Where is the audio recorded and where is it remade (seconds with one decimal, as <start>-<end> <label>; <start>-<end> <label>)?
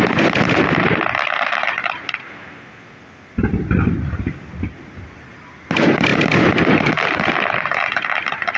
0.0-8.6 recorded